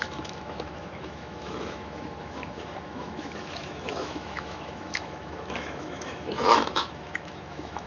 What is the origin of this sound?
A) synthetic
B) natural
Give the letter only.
A